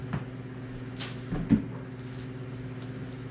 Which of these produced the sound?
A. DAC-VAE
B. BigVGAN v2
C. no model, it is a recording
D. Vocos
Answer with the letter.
C